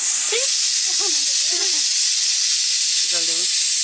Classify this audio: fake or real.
real